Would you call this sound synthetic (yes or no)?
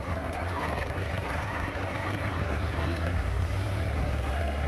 yes